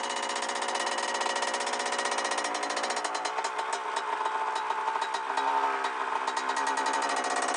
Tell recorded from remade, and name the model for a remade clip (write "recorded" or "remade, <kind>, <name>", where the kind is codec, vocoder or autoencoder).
recorded